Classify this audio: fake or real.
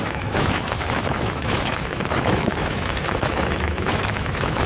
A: fake